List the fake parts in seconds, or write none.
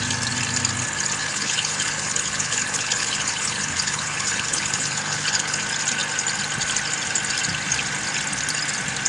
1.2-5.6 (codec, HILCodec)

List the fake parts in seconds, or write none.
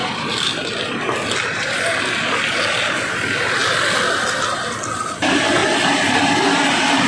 none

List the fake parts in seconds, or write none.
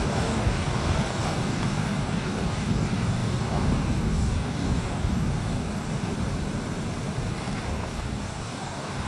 0.0-6.1 (codec, DAC); 7.3-9.1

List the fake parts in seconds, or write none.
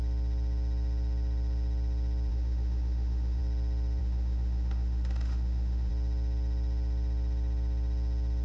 2.3-3.4 (autoencoder, DAC-VAE); 4.0-5.9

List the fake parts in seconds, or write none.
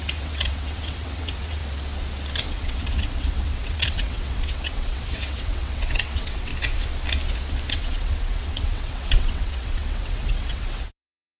0.0-1.6 (vocoder, WaveNeXt); 2.5-6.5; 7.7-11.4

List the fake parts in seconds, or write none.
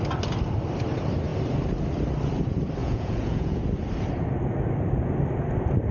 2.8-3.6 (vocoder, Vocos)